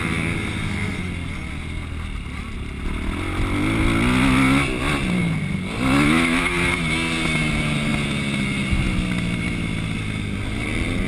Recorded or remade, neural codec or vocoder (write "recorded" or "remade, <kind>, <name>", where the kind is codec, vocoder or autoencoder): recorded